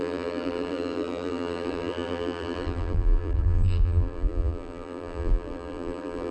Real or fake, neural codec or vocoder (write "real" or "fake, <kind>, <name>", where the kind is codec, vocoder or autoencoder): fake, vocoder, BigVGAN v2